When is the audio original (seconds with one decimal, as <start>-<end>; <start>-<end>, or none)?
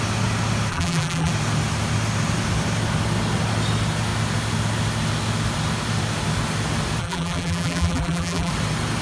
0.0-0.7; 1.3-7.0; 8.5-9.0